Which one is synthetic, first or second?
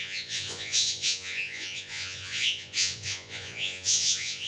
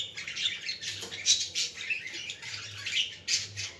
first